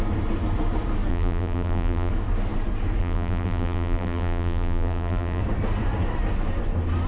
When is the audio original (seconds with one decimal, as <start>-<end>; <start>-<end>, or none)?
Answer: 0.0-1.1; 2.1-3.0; 5.4-7.1